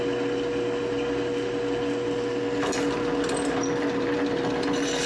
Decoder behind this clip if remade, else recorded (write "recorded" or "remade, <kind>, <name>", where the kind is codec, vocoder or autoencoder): recorded